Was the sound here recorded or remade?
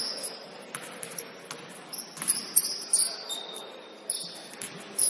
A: recorded